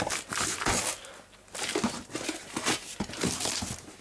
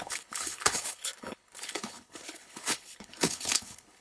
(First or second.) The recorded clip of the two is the first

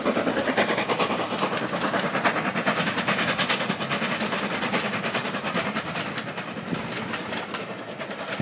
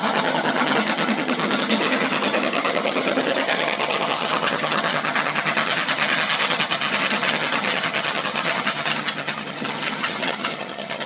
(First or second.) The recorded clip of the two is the first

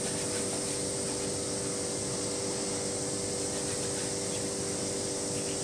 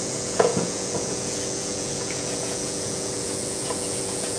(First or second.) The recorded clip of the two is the first